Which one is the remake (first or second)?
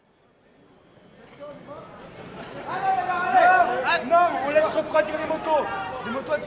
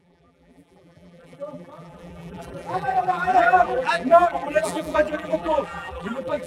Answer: second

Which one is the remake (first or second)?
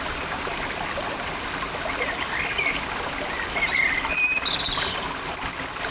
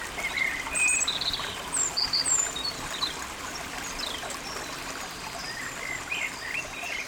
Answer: second